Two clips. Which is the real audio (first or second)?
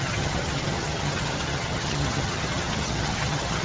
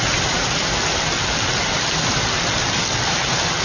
second